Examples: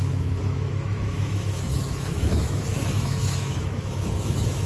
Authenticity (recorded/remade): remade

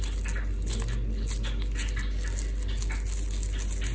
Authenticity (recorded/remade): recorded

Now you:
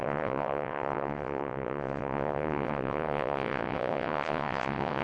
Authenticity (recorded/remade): remade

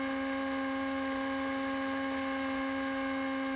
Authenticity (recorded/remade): recorded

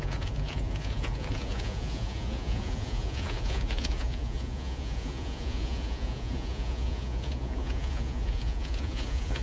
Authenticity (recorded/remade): remade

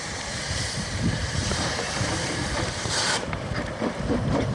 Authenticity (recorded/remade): remade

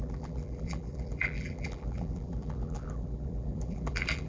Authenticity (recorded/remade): remade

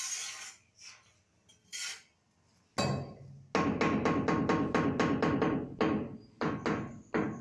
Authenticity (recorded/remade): recorded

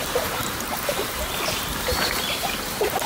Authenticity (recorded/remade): remade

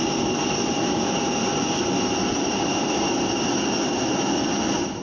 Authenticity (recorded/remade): recorded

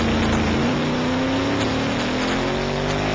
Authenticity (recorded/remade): recorded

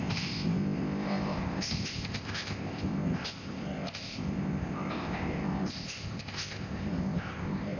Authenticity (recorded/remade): remade